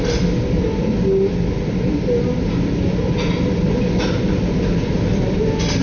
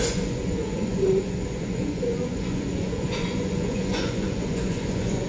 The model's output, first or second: second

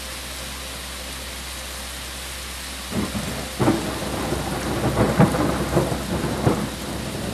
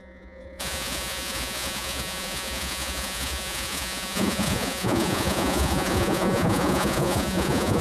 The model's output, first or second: second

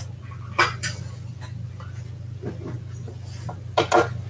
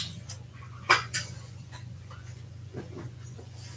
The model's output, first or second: second